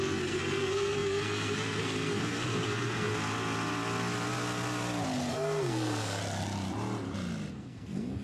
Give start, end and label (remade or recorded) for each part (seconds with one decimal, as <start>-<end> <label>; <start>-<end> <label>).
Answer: 0.0-3.1 remade; 3.1-5.3 recorded; 5.3-6.2 remade; 6.2-7.5 recorded; 7.5-8.2 remade